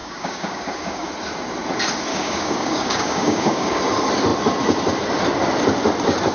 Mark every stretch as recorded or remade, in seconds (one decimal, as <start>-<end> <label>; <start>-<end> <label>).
0.0-1.1 remade; 1.1-2.1 recorded; 2.1-3.8 remade; 3.8-6.3 recorded